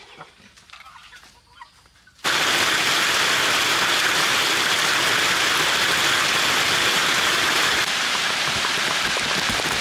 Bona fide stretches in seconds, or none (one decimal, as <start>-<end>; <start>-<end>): 0.0-7.0; 8.5-9.8